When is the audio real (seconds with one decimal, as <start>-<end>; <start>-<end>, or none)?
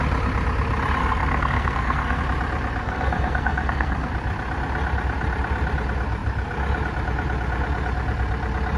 0.0-1.0; 2.2-2.8; 4.1-8.8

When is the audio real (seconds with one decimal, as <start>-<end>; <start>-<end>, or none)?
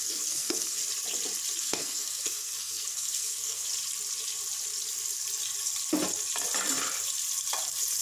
0.8-1.6; 3.7-8.0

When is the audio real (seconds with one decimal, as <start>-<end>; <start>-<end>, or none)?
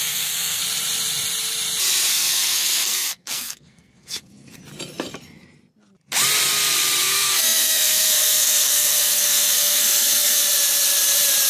0.6-2.1; 4.6-7.0; 10.4-11.5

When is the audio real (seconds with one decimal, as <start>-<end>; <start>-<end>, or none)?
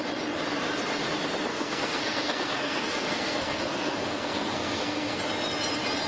0.0-1.5; 5.2-6.1